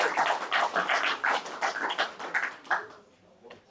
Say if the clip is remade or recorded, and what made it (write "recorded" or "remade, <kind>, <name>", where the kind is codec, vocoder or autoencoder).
remade, vocoder, BigVGAN v2